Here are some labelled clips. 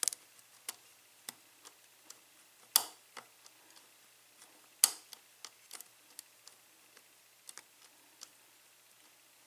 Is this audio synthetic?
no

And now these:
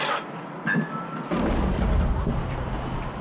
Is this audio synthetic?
no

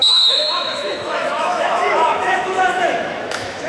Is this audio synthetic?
yes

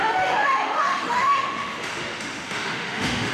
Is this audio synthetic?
yes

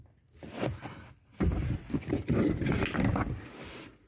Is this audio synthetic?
no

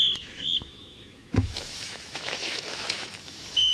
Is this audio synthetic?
yes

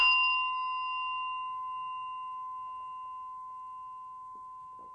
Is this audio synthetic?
no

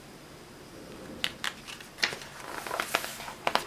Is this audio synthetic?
no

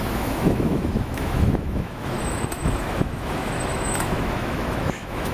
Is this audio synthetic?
yes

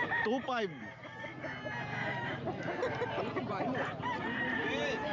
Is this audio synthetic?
no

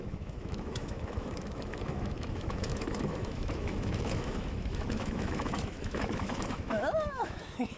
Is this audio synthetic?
yes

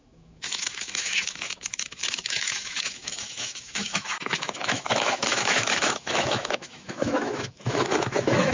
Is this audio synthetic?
yes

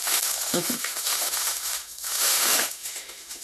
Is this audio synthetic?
yes